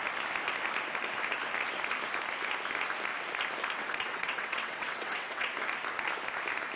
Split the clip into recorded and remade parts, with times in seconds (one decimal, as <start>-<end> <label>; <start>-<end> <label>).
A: 0.0-3.8 recorded; 3.8-5.5 remade; 5.5-6.8 recorded